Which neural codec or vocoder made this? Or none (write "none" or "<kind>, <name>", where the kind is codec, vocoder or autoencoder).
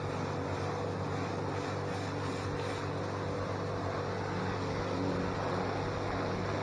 none